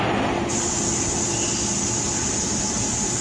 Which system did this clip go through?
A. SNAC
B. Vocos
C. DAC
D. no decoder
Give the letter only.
D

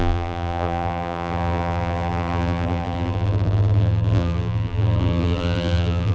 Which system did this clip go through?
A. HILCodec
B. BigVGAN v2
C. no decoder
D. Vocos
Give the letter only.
B